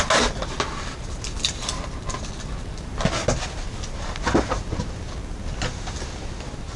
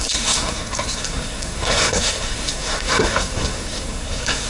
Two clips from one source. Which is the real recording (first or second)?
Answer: first